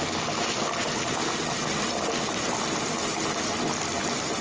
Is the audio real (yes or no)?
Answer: yes